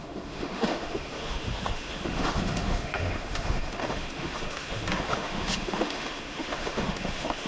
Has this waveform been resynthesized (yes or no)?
yes